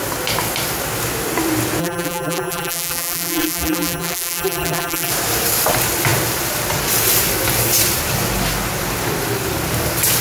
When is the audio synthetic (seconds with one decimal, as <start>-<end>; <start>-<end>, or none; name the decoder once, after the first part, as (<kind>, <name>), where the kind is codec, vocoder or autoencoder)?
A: 1.8-5.1 (vocoder, BigVGAN v2)